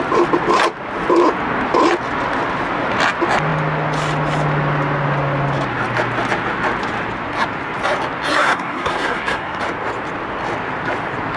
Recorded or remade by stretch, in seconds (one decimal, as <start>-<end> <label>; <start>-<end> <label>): 0.0-8.3 recorded; 8.3-9.6 remade; 9.6-11.4 recorded